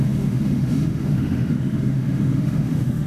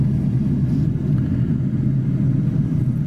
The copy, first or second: first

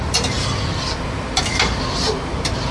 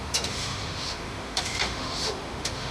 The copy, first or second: second